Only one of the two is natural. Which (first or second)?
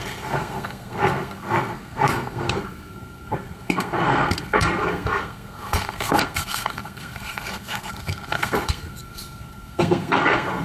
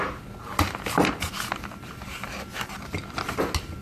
second